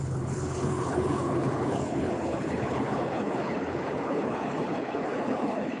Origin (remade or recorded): remade